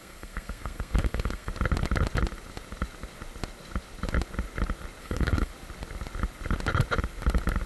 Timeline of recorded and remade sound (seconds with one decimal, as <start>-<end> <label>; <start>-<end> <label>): 0.0-1.5 remade; 1.5-5.0 recorded; 5.0-5.5 remade; 5.5-7.7 recorded